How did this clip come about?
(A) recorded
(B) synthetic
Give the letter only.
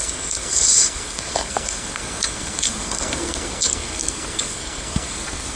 B